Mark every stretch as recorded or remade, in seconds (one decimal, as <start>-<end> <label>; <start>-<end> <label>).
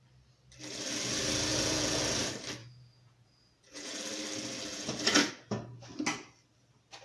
0.0-1.5 recorded; 1.5-2.0 remade; 2.0-2.6 recorded; 2.6-4.0 remade; 4.0-4.7 recorded; 4.7-5.3 remade; 5.3-7.0 recorded